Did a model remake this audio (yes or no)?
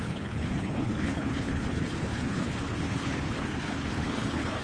yes